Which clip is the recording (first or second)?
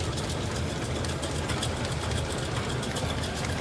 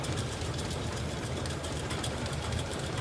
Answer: first